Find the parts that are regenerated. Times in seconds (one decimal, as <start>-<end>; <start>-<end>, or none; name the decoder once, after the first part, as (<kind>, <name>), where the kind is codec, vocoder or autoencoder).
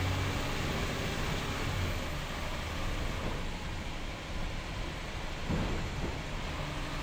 none